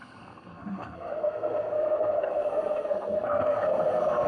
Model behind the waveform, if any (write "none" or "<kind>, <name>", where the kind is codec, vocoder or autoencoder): codec, SNAC